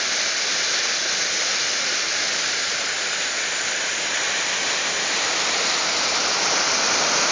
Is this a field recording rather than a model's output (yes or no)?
yes